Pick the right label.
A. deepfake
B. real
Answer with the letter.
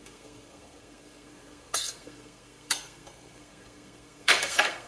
A